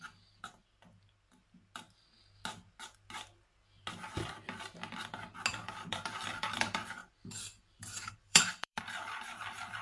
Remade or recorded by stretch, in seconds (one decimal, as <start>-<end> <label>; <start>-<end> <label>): 0.0-0.6 remade; 0.6-5.5 recorded; 5.5-9.8 remade